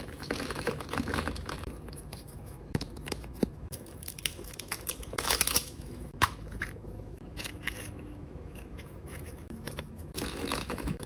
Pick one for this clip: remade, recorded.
remade